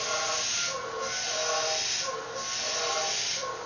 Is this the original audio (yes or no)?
yes